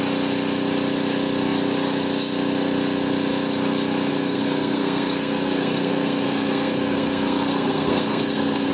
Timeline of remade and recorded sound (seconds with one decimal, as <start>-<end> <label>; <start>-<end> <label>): 0.0-4.1 recorded; 4.1-8.7 remade